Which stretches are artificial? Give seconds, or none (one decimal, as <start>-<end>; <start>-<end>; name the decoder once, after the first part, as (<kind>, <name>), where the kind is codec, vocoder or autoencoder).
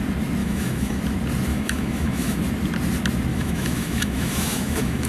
0.4-1.0 (autoencoder, DAC-VAE); 1.5-2.4; 3.3-5.1